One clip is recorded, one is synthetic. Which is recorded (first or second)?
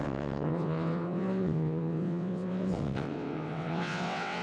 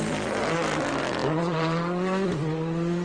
second